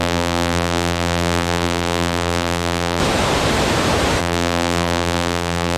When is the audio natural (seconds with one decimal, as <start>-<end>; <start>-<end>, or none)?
3.0-4.2